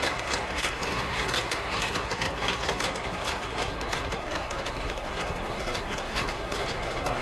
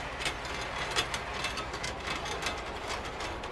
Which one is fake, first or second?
first